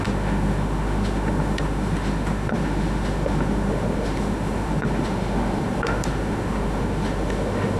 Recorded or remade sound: remade